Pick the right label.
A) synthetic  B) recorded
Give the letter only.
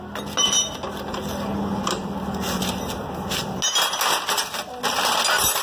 B